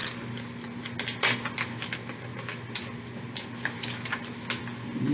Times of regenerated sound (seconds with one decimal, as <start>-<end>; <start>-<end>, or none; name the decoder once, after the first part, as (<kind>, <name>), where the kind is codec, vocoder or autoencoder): none